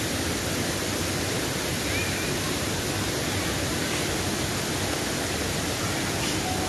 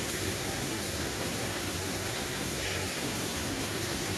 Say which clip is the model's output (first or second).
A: second